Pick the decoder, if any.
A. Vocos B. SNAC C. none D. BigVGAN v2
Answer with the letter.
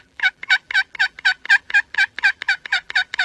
D